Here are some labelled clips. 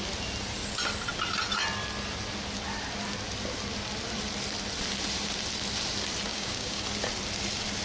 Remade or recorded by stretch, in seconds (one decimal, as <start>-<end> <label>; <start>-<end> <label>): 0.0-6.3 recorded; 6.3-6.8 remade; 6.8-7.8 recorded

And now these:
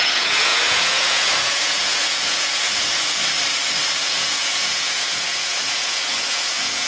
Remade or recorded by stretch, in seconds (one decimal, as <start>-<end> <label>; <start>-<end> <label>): 0.0-3.2 remade; 3.2-4.0 recorded; 4.0-6.9 remade

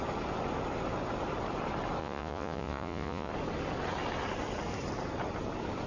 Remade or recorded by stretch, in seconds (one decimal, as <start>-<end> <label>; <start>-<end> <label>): 0.0-2.0 recorded; 2.0-3.3 remade; 3.3-5.9 recorded

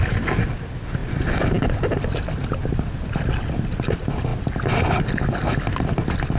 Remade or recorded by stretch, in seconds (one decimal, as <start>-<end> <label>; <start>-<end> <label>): 0.0-6.4 recorded